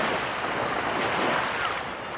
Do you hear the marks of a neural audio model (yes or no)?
no